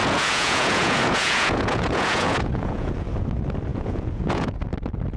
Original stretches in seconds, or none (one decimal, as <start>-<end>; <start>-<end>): 3.1-3.7; 4.6-5.2

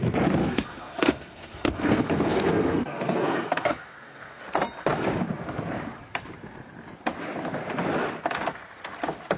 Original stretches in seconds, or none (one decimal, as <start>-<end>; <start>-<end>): 0.0-0.4; 4.4-9.4

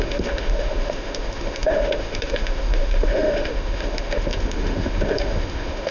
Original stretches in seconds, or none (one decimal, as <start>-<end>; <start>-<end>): none